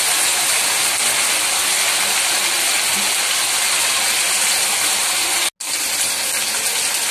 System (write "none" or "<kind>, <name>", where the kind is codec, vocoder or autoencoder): none